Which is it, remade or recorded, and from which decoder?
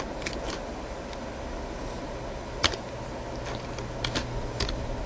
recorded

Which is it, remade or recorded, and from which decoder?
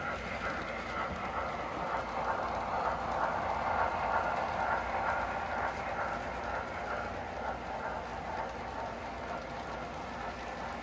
recorded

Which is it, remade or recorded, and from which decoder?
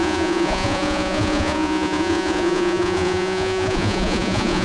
remade, vocoder, Vocos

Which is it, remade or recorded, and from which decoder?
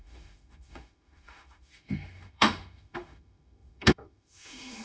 remade, autoencoder, DAC-VAE